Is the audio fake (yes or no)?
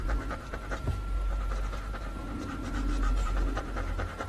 yes